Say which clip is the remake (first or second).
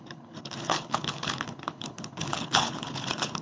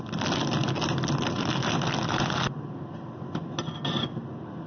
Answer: first